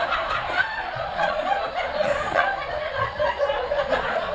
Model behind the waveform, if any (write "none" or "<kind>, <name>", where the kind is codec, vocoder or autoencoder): vocoder, Vocos